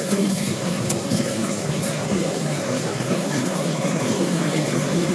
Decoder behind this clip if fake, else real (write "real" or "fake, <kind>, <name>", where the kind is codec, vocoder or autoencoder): fake, codec, SNAC